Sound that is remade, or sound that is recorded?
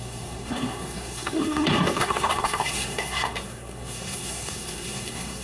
remade